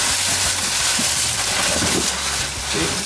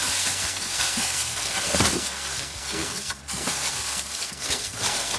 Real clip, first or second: first